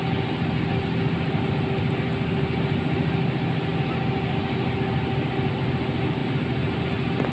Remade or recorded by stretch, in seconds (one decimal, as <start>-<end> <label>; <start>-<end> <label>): 0.0-7.3 recorded